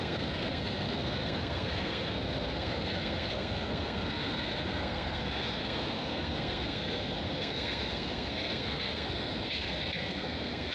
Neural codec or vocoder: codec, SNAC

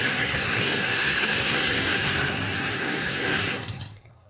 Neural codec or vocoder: codec, SNAC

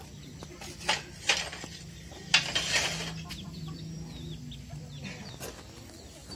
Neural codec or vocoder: none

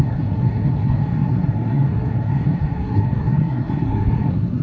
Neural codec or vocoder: codec, SNAC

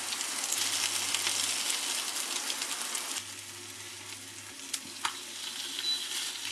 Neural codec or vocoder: none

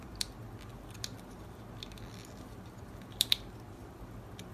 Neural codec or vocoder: none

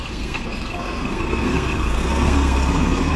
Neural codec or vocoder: codec, SNAC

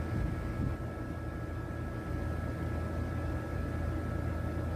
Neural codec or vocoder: none